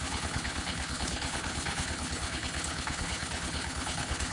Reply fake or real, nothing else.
fake